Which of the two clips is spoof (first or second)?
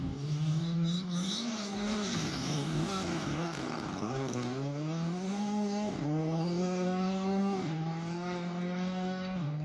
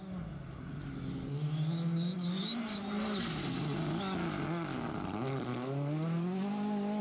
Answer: first